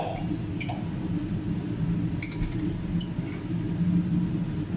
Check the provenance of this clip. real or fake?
real